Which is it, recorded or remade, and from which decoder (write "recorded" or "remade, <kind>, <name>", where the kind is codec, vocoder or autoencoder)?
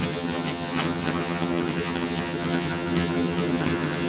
remade, vocoder, HiFi-GAN